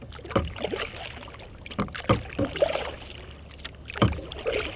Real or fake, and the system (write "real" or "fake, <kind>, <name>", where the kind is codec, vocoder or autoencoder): real